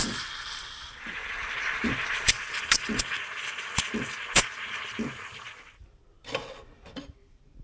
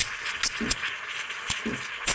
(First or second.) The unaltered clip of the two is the second